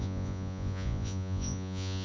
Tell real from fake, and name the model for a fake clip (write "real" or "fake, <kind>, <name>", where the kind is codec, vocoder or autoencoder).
fake, vocoder, Vocos